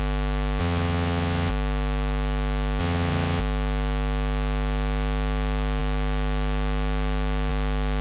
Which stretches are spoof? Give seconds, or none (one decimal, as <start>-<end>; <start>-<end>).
0.6-1.5; 2.8-3.4